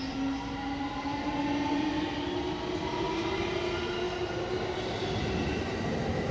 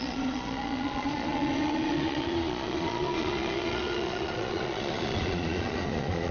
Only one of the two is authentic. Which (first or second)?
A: first